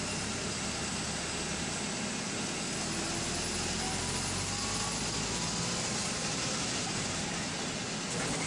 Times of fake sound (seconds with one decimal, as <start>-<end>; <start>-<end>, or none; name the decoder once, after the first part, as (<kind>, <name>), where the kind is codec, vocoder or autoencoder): 6.0-7.7 (vocoder, BigVGAN v2)